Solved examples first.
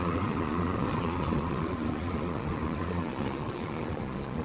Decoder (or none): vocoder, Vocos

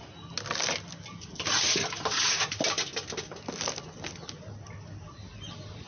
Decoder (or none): none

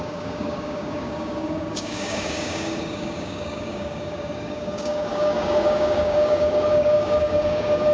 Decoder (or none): codec, DAC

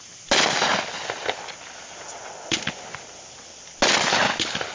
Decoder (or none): none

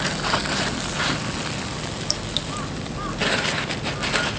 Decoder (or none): none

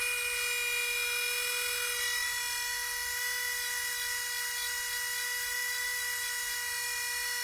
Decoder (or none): none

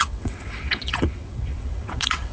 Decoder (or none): vocoder, WaveNeXt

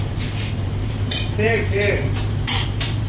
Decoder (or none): vocoder, BigVGAN v2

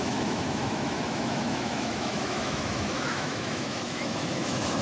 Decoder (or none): autoencoder, DAC-VAE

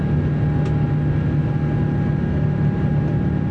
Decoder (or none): none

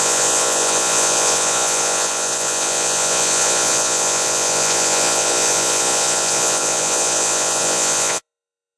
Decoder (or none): vocoder, Vocos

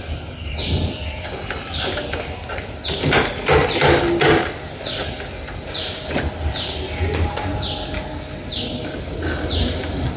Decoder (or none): none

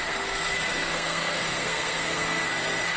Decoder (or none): codec, SNAC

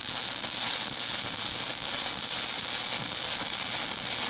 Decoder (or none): none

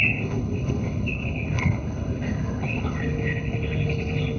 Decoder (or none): codec, HILCodec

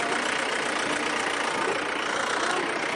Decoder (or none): none